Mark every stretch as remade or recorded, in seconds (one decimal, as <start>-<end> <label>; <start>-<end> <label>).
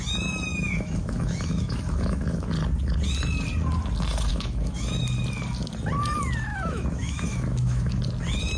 0.0-0.5 recorded; 0.5-2.5 remade; 2.5-4.3 recorded; 4.3-5.0 remade; 5.0-6.5 recorded; 6.5-8.0 remade; 8.0-8.6 recorded